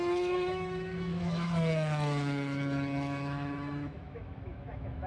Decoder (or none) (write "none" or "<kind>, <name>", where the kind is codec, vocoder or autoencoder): autoencoder, DAC-VAE